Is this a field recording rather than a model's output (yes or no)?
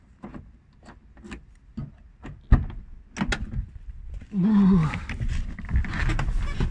yes